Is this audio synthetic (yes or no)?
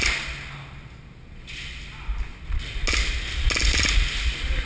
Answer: no